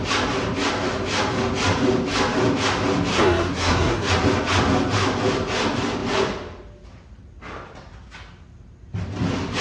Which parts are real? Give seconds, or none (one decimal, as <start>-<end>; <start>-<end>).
0.0-3.1; 4.1-9.6